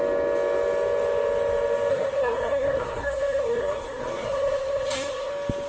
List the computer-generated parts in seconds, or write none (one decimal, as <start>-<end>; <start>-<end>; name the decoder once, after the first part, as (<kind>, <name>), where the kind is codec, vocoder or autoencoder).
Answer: 1.9-5.3 (codec, SNAC)

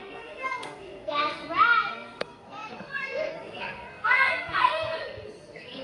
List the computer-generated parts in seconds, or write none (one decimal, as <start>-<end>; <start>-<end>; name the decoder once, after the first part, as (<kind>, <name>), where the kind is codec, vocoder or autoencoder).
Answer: 0.0-1.4 (codec, SNAC); 1.9-5.8